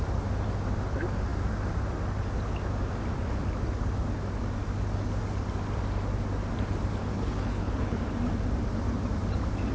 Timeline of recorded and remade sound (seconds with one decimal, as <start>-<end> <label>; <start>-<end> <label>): 0.0-7.0 recorded; 7.0-8.0 remade; 8.0-9.7 recorded